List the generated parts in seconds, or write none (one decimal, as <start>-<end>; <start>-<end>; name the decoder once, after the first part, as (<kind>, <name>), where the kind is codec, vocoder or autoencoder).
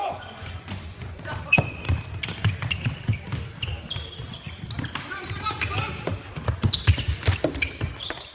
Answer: 0.0-1.8 (vocoder, Vocos)